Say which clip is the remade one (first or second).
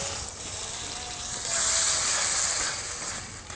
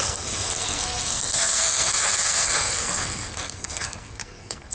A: second